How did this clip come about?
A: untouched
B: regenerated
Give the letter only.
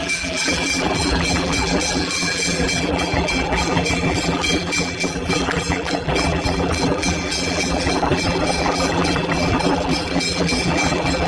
B